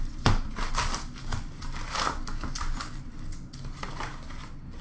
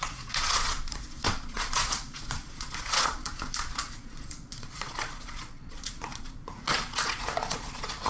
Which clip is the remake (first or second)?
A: second